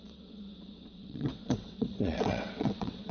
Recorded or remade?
remade